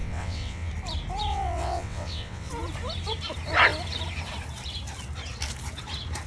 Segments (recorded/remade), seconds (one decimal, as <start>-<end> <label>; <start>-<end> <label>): 0.0-0.7 remade; 0.7-1.3 recorded; 1.3-2.5 remade; 2.5-6.3 recorded